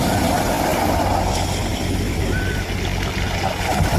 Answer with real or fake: real